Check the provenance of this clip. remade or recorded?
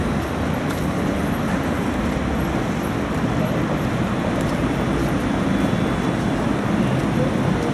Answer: recorded